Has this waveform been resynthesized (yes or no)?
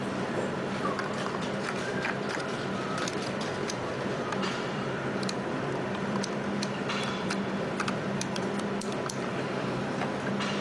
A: yes